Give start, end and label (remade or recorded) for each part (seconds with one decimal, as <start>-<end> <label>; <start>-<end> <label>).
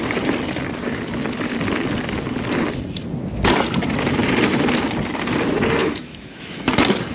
0.0-5.8 recorded; 5.8-6.6 remade; 6.6-7.1 recorded